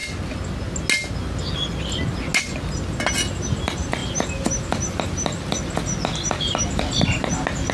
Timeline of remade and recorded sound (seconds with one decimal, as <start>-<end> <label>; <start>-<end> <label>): 0.0-7.7 recorded